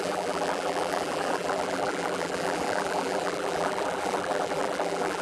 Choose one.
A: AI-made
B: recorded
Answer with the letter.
A